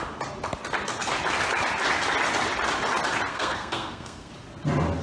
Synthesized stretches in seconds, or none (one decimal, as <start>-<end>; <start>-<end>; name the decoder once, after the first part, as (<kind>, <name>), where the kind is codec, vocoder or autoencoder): 3.3-4.3 (codec, SNAC)